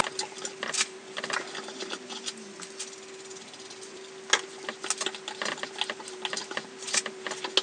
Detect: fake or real real